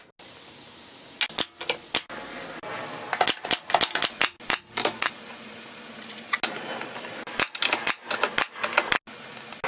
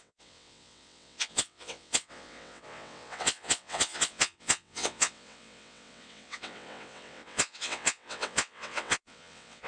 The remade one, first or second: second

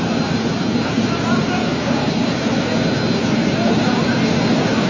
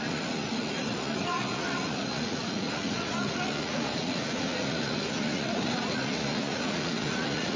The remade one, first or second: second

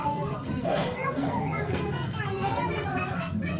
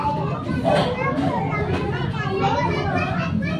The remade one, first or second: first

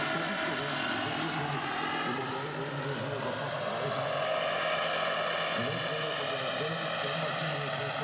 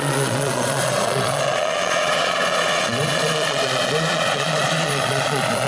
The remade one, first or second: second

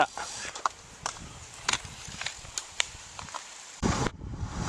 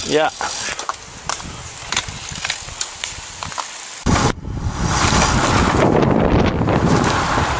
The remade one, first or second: first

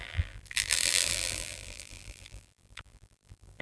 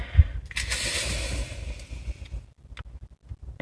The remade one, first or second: first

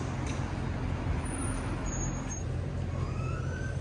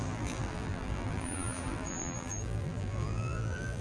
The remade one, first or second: second